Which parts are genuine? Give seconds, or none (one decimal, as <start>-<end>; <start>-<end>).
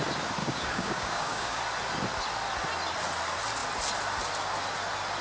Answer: 0.0-0.4; 1.6-5.2